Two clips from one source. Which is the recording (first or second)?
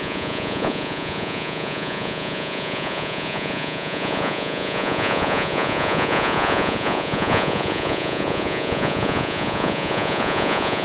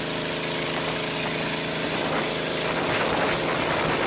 second